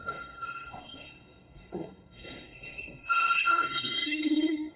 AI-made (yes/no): yes